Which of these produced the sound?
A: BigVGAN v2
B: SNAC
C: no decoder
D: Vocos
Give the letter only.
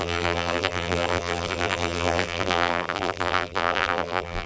A